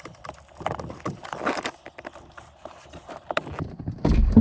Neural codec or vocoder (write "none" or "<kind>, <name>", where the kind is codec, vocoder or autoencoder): none